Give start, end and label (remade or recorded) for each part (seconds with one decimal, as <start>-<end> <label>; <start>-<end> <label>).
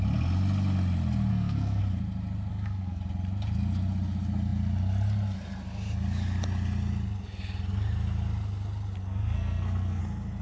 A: 0.0-1.3 recorded; 1.3-1.8 remade; 1.8-2.5 recorded; 2.5-3.0 remade; 3.0-9.0 recorded; 9.0-10.0 remade; 10.0-10.4 recorded